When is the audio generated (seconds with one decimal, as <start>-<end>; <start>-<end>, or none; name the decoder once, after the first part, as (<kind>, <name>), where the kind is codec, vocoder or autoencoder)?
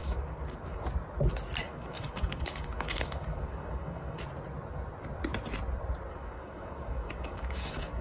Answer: 0.0-0.8 (codec, DAC); 1.6-4.2; 6.1-8.0